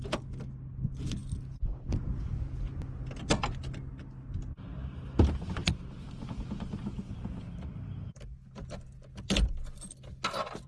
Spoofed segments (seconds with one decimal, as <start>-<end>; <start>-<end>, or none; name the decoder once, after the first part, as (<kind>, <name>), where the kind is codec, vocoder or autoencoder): none